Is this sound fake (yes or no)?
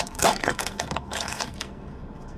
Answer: yes